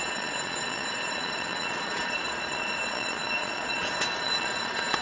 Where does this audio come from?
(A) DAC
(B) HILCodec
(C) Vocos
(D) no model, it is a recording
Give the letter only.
C